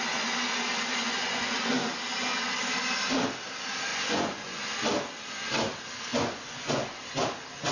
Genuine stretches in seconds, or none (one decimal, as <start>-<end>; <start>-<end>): 0.0-1.0; 1.7-3.9; 4.6-6.1; 7.0-7.7